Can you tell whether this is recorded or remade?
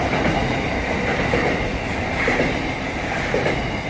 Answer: recorded